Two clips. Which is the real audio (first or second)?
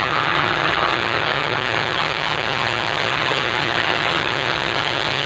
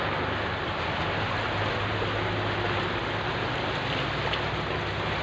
second